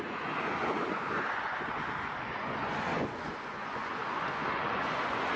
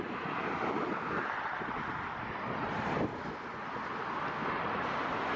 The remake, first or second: first